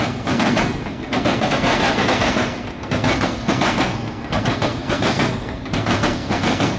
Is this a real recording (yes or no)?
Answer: no